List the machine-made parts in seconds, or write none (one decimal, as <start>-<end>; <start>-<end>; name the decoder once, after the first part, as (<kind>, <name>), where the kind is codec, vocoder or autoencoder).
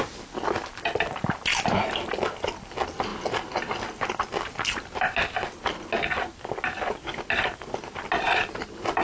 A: none